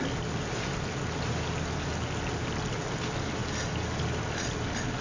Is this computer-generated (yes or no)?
no